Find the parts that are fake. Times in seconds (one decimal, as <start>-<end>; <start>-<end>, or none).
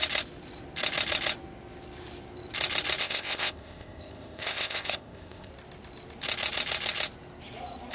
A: 3.0-5.5